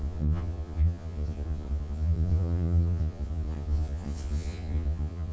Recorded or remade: remade